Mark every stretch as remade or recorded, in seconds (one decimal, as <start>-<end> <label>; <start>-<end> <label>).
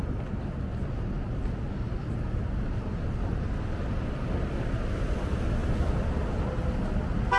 0.0-7.4 recorded